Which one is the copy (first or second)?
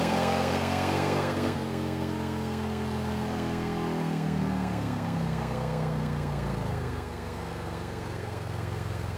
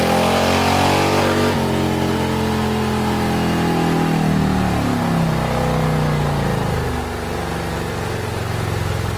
first